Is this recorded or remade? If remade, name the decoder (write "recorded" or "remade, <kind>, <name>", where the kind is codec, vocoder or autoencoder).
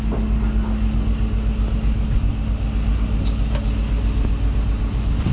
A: recorded